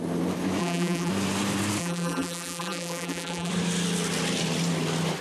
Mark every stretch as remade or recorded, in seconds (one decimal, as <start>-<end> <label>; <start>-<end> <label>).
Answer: 0.0-0.6 recorded; 0.6-1.1 remade; 1.1-1.8 recorded; 1.8-3.5 remade; 3.5-5.2 recorded